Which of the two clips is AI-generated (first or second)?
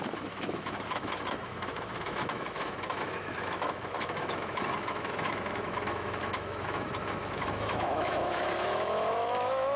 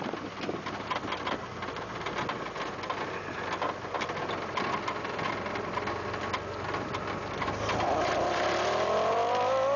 first